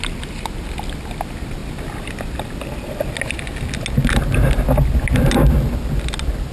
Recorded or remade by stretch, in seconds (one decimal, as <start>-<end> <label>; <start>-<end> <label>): 0.0-6.5 recorded